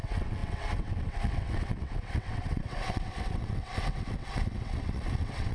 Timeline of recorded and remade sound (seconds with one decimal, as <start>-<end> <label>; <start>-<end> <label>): 0.0-5.5 remade